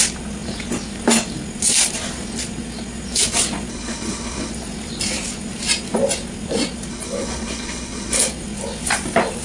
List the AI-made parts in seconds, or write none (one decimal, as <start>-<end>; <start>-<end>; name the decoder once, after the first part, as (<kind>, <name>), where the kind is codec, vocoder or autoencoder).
3.7-4.5 (codec, HILCodec); 6.9-8.3